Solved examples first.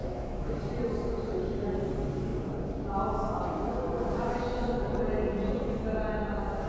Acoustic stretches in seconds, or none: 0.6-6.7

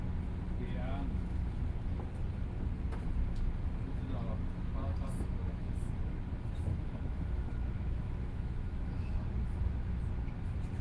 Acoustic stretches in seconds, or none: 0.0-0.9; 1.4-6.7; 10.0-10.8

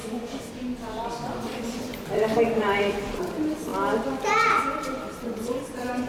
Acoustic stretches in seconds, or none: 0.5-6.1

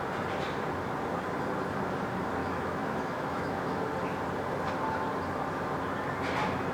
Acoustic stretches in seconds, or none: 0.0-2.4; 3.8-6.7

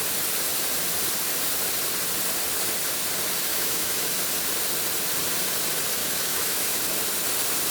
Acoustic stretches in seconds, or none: 0.0-3.5; 4.1-6.0; 6.8-7.7